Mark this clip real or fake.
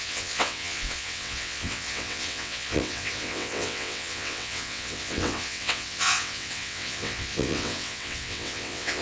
fake